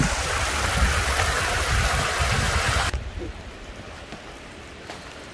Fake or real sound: real